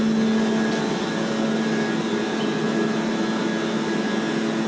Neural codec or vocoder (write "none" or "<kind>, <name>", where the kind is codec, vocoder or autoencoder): none